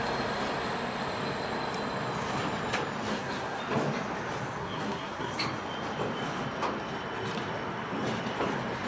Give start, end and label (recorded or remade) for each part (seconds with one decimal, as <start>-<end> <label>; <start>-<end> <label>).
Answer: 0.0-3.1 recorded; 3.1-3.6 remade; 3.6-4.6 recorded; 4.6-5.3 remade; 5.3-8.9 recorded